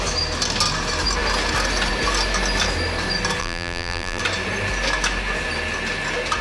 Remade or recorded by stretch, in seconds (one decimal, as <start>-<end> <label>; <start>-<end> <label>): 0.0-3.4 recorded; 3.4-4.2 remade; 4.2-6.4 recorded